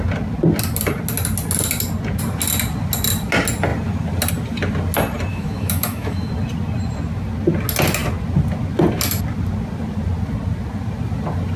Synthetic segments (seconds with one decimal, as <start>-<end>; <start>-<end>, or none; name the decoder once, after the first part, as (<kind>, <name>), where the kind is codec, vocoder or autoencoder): 5.3-6.3 (autoencoder, DAC-VAE)